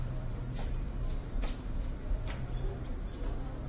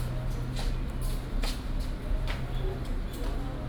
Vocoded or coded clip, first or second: first